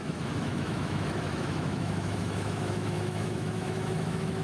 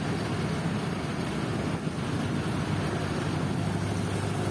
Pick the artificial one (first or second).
first